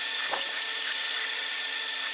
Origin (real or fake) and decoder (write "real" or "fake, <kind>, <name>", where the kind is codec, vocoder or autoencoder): real